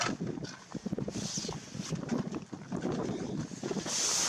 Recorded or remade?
recorded